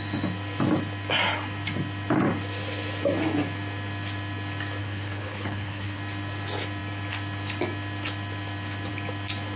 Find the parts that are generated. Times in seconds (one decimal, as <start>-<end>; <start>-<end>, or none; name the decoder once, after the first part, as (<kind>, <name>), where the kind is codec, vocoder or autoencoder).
4.8-6.0 (codec, HILCodec)